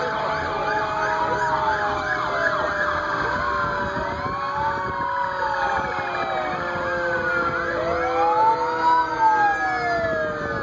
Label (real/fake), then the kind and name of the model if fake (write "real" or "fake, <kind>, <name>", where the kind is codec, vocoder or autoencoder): real